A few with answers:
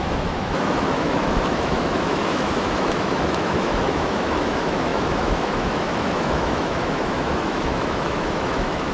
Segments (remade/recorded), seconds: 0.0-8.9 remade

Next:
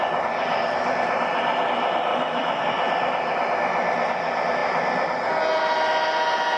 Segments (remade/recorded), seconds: 0.0-2.1 recorded; 2.1-2.6 remade; 2.6-6.6 recorded

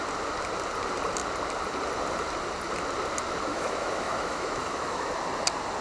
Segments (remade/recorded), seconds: 0.0-3.5 recorded; 3.5-5.1 remade; 5.1-5.8 recorded

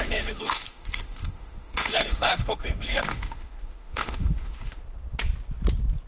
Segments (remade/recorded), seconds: 0.0-4.8 remade; 4.8-6.1 recorded

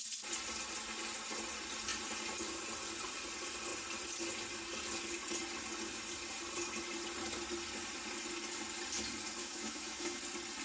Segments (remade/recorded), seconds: 0.0-9.4 recorded; 9.4-10.2 remade; 10.2-10.6 recorded